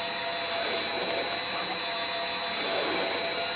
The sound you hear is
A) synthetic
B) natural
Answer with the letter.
B